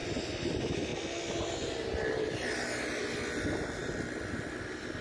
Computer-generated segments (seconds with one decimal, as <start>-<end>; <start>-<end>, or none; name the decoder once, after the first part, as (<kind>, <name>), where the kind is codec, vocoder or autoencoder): none